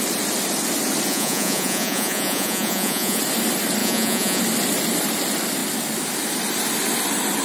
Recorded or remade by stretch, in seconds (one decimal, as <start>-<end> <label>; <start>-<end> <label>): 0.0-1.1 recorded; 1.1-3.2 remade; 3.2-3.8 recorded; 3.8-4.4 remade; 4.4-7.4 recorded